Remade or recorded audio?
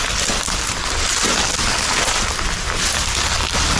recorded